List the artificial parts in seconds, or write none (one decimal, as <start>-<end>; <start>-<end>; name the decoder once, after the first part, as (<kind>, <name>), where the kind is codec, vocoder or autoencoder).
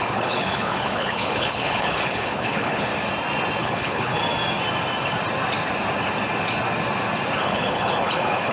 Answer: 0.0-2.9 (codec, HILCodec); 3.6-4.2; 7.4-8.5